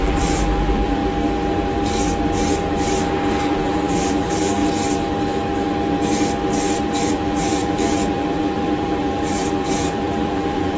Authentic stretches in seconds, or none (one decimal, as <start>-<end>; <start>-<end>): 1.0-3.4; 4.6-7.1